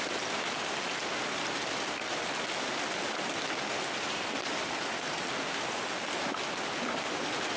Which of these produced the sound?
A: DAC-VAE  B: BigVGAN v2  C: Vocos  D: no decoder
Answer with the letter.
D